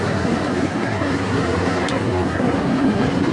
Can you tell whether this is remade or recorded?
remade